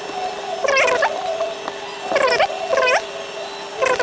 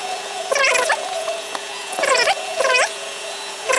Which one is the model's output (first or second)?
second